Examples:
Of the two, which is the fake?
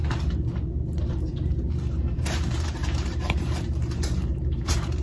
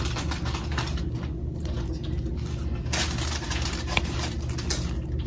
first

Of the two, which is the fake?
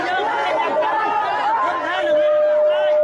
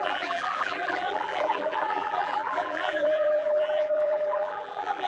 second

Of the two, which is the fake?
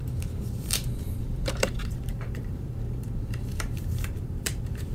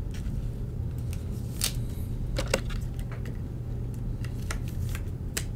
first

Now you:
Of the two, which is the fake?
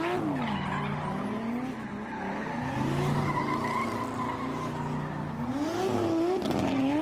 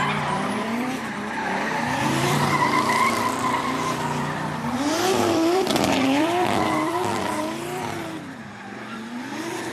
second